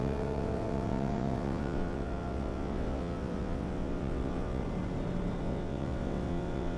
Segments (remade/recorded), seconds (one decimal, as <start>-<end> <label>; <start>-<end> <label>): 0.0-4.6 remade; 4.6-5.4 recorded; 5.4-6.8 remade